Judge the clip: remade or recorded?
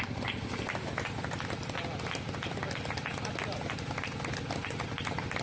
recorded